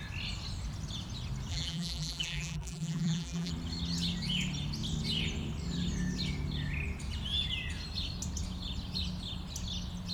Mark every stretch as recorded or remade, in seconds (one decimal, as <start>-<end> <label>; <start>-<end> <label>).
0.0-1.5 recorded; 1.5-3.5 remade; 3.5-10.1 recorded